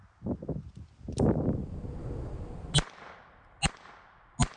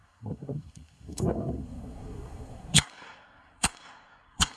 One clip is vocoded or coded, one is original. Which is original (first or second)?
first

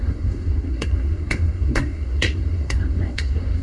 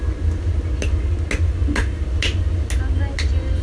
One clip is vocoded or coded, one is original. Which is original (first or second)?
second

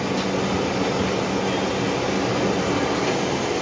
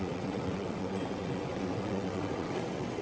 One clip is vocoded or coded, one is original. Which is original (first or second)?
first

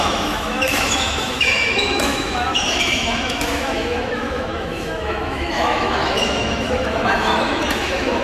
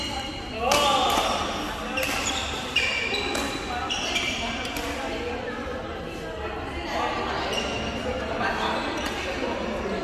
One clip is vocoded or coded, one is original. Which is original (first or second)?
second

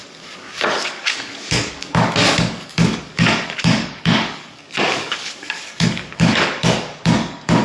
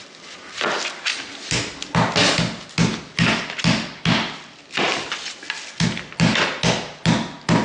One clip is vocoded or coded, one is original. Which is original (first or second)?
second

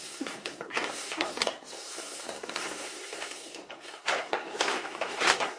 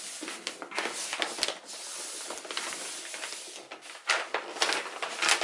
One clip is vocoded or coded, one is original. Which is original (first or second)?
second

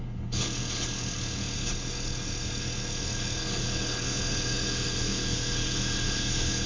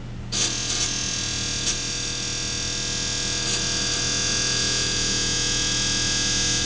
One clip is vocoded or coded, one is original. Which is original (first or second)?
second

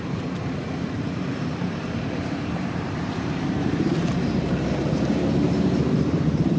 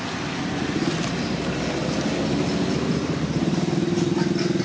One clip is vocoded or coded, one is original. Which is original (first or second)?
second